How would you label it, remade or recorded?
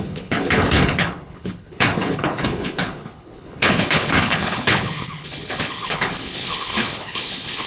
remade